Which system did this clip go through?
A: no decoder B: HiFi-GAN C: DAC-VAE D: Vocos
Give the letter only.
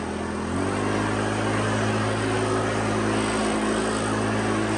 A